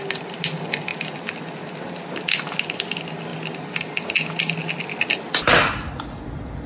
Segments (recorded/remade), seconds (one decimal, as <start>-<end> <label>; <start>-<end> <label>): 0.0-6.7 recorded